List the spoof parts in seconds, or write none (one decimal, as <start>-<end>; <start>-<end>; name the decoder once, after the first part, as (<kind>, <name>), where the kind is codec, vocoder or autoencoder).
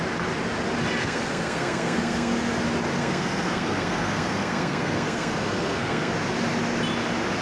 1.0-2.6 (codec, SNAC); 3.0-6.1